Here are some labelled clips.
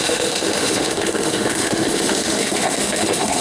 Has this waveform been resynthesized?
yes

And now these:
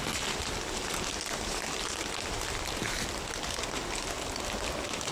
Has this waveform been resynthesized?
no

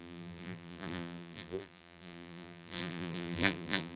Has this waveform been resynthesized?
yes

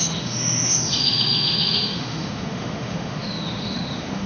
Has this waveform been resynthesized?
yes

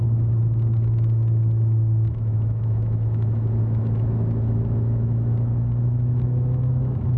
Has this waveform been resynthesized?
yes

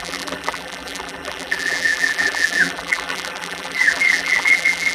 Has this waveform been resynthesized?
yes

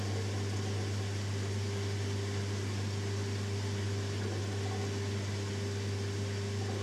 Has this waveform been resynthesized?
no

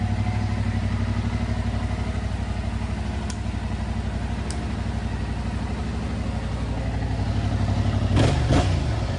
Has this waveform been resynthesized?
no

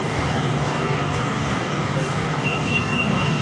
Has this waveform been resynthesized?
yes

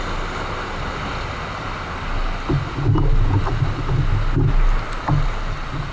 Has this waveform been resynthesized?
no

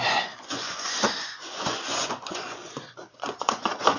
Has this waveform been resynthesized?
yes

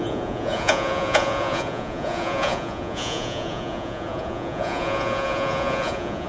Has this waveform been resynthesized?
yes